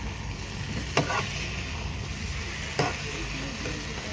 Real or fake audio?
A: real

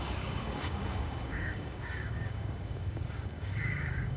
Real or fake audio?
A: fake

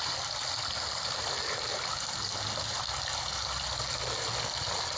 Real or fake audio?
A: real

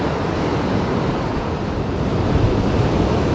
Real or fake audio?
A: real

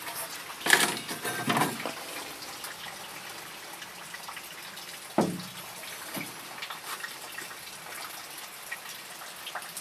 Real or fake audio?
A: real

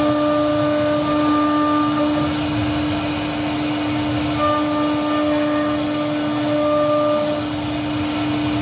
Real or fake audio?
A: real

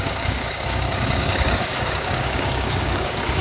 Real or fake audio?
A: fake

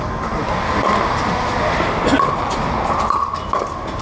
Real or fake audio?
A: real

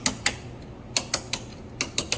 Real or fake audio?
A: real